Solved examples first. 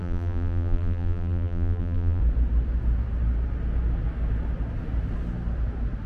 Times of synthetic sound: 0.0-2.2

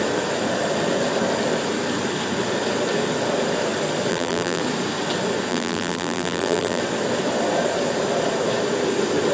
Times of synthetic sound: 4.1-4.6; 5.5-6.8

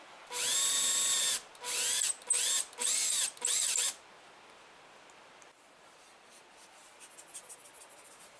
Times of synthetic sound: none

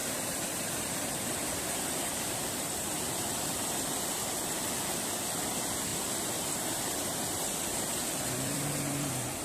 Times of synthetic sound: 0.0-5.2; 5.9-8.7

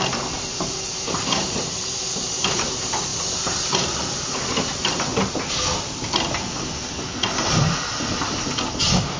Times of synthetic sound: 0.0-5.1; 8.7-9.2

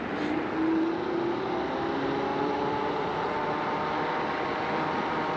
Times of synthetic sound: 2.3-3.6

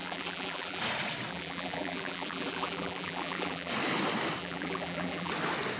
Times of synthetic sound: 0.0-0.8; 1.3-3.7; 4.4-5.3